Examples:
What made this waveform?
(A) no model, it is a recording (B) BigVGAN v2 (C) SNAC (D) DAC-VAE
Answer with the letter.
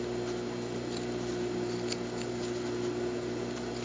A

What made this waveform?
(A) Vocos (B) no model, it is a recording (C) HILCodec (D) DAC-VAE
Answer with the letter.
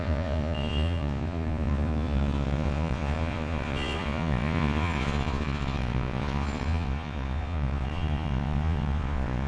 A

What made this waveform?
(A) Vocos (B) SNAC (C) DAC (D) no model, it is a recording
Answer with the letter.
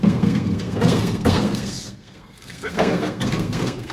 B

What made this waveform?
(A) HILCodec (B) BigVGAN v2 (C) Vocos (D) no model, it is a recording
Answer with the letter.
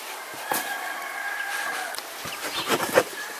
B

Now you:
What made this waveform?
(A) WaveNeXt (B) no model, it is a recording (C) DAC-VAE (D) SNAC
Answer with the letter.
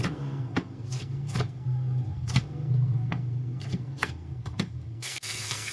D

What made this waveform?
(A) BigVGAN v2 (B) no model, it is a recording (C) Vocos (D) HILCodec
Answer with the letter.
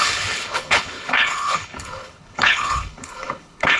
D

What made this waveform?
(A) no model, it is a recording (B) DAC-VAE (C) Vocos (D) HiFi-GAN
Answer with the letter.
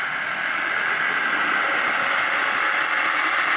A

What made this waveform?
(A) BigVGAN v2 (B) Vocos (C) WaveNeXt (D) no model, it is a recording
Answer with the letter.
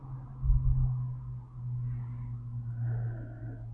D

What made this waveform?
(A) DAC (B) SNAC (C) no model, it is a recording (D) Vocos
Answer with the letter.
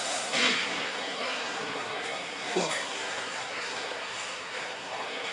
B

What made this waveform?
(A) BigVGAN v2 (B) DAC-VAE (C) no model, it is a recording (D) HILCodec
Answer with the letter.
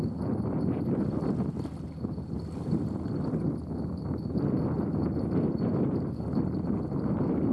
C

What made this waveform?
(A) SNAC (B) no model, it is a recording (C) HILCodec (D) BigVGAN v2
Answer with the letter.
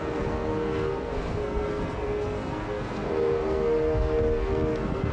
A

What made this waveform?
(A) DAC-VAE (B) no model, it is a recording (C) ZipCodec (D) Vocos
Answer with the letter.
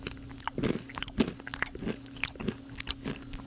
B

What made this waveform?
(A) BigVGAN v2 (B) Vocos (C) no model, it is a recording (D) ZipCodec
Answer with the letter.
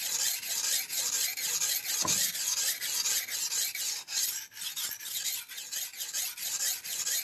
C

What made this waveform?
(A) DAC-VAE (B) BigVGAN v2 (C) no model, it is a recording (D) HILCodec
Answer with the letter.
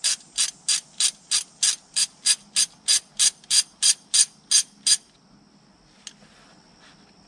C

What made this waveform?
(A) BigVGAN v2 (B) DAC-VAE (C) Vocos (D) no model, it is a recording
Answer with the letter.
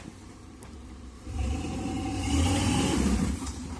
A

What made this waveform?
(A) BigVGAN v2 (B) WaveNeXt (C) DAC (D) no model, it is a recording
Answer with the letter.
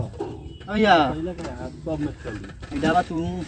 A